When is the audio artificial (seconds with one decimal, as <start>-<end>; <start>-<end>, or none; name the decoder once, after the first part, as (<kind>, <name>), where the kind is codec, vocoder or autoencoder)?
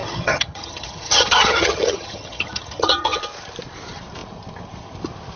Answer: 0.0-3.2 (vocoder, HiFi-GAN)